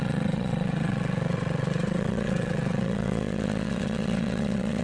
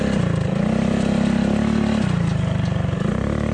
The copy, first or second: first